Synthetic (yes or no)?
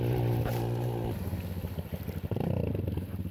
no